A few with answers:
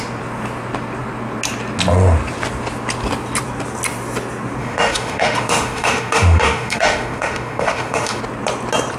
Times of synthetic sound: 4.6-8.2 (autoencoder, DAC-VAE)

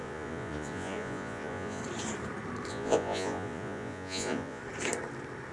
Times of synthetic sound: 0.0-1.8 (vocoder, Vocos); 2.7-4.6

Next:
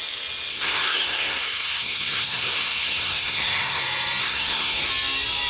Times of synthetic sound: 0.5-3.8 (codec, SNAC); 4.2-4.9

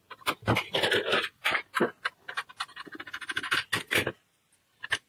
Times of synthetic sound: none